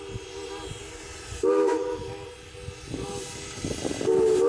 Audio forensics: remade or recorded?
recorded